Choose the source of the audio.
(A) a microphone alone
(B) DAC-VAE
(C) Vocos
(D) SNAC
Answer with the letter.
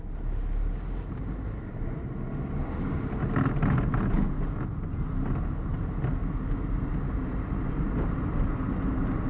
A